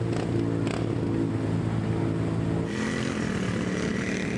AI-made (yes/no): no